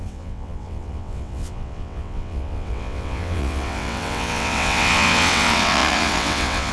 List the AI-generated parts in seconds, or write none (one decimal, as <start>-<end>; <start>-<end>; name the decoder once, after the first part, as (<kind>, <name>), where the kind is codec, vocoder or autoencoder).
0.0-6.7 (vocoder, WaveNeXt)